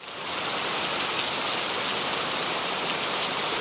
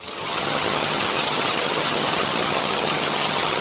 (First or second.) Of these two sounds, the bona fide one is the first